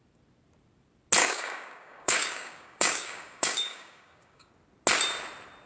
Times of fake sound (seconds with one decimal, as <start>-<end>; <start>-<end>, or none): 1.2-4.5